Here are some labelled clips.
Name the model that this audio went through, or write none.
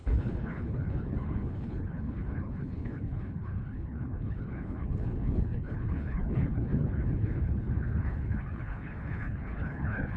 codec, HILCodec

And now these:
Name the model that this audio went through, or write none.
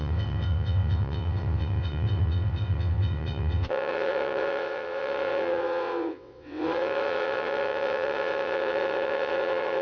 vocoder, WaveNeXt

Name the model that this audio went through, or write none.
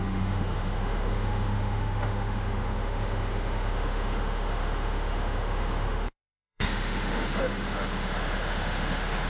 autoencoder, DAC-VAE